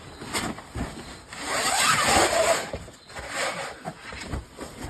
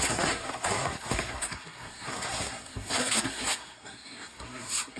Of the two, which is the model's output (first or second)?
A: second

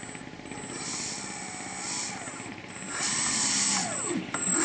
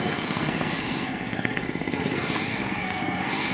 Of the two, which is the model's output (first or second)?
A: second